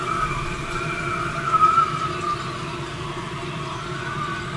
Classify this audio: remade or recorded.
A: recorded